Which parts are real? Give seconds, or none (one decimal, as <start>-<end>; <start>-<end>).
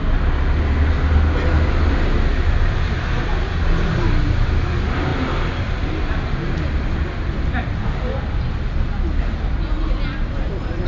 0.0-10.9